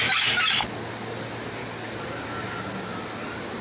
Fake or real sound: real